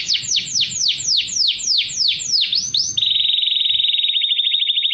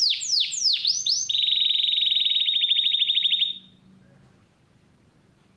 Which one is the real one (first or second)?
second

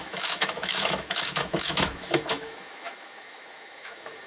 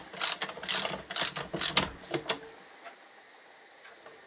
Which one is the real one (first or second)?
second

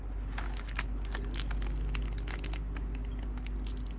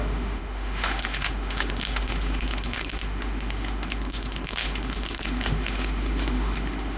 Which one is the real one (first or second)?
first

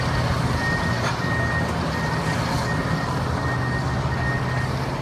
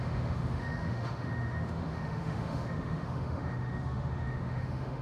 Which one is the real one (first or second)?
first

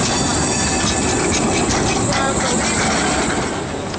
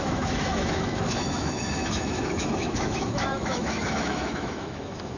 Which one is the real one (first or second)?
first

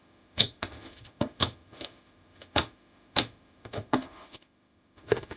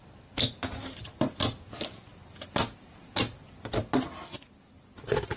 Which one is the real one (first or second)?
second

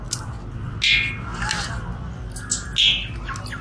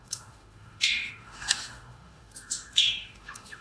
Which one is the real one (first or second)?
first